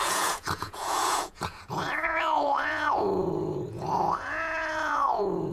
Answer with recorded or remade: remade